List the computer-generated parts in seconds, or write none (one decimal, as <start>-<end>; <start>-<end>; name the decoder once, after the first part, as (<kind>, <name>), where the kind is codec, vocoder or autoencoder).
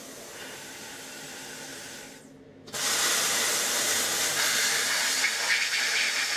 none